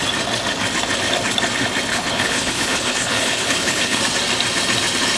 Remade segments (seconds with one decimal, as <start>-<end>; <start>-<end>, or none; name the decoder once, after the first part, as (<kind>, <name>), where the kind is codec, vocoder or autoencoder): 1.9-4.0 (codec, HILCodec)